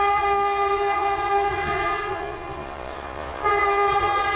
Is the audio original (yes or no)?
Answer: no